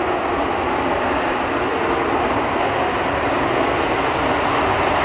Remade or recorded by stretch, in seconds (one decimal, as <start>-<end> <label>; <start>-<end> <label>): 0.0-5.0 recorded